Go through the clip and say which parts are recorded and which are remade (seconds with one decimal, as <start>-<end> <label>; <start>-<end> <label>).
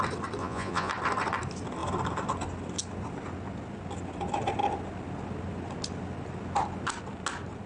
0.0-0.4 recorded; 0.4-0.9 remade; 0.9-7.7 recorded